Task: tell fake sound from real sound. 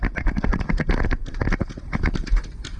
real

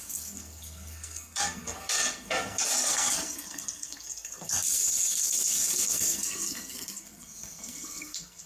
fake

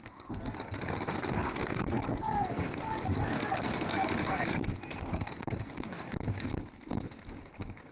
fake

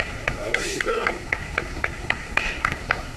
fake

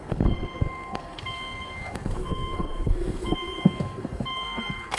fake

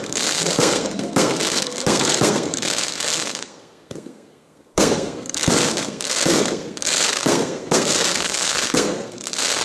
fake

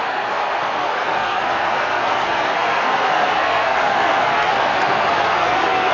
fake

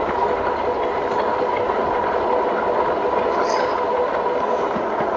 real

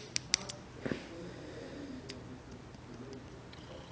real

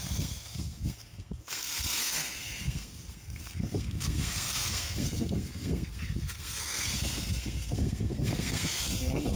fake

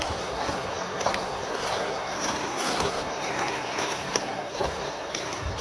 fake